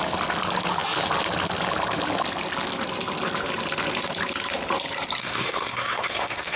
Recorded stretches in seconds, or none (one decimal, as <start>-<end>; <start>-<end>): 0.0-5.2